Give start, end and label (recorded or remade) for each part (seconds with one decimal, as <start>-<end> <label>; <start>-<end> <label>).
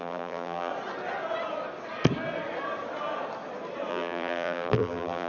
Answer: 0.0-0.7 remade; 0.7-3.9 recorded; 3.9-5.3 remade